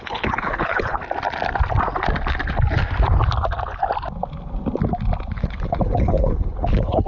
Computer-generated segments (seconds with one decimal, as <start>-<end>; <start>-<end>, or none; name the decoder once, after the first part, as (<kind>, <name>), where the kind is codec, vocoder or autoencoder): 0.0-1.0 (codec, HILCodec); 5.3-7.1